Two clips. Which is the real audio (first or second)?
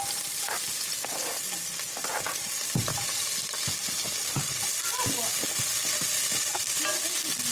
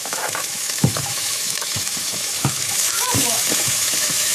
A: first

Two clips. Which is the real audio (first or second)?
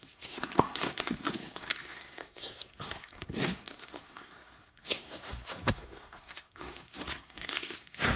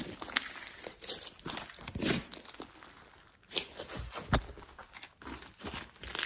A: second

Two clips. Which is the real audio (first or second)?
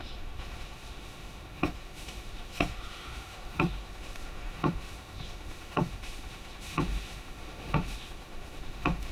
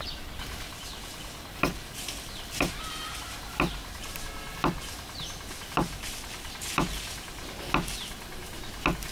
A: second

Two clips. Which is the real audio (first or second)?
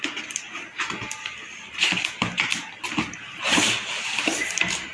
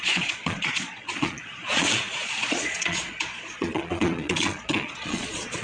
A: first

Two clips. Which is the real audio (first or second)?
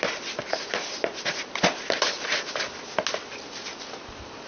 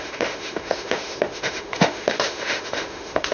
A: first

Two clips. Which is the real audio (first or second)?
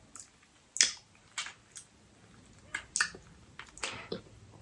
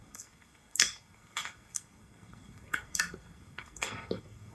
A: first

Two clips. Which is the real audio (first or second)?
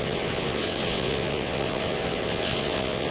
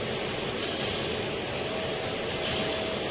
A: second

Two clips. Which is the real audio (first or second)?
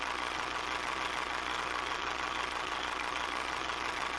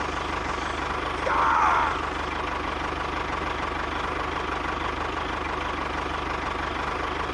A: second